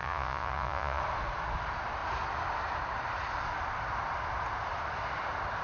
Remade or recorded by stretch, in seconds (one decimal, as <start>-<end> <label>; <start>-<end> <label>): 0.0-1.0 remade; 1.0-5.6 recorded